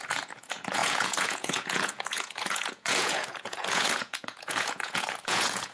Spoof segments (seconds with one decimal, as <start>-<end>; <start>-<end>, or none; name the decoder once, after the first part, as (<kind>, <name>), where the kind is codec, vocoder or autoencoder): 0.0-5.7 (vocoder, Vocos)